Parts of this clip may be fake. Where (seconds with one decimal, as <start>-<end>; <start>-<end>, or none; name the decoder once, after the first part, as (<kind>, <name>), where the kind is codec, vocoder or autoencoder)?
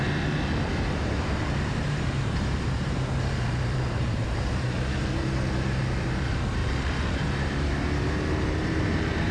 0.0-9.3 (vocoder, BigVGAN v2)